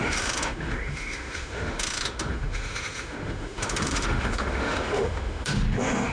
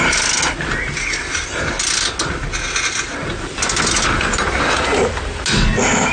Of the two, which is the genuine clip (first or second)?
second